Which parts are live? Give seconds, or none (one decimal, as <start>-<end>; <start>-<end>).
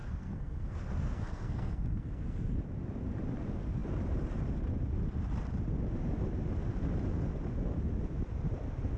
2.5-9.0